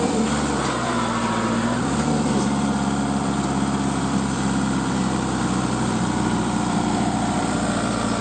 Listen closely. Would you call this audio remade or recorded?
remade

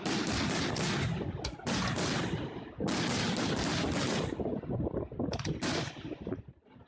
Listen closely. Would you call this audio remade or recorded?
recorded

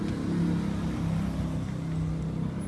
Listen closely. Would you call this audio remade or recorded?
recorded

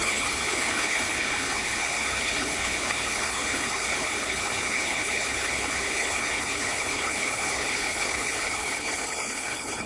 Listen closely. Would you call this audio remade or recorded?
remade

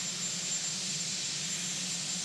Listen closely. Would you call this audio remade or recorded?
recorded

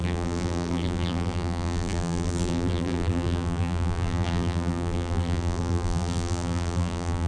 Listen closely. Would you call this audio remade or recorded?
remade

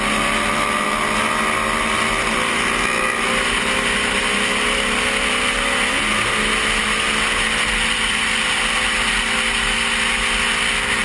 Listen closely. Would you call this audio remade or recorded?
recorded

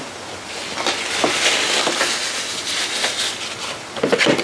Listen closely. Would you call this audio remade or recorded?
recorded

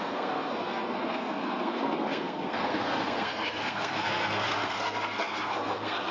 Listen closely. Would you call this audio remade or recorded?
remade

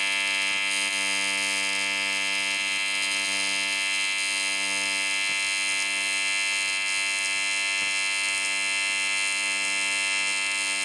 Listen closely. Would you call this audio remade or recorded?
recorded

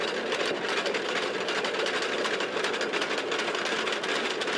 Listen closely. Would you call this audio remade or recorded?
recorded